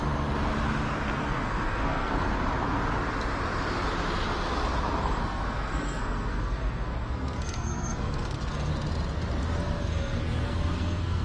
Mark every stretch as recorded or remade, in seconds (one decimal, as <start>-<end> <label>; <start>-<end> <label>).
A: 0.0-1.2 recorded; 1.2-2.3 remade; 2.3-5.2 recorded; 5.2-8.7 remade; 8.7-9.6 recorded; 9.6-11.2 remade